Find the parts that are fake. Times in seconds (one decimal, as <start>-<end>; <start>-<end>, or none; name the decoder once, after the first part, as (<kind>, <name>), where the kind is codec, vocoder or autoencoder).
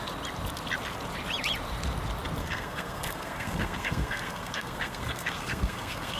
2.4-6.2 (codec, SNAC)